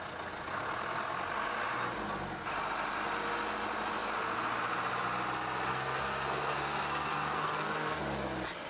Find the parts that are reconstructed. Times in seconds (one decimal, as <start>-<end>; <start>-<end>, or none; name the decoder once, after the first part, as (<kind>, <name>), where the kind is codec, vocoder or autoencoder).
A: 5.7-8.0 (codec, SNAC)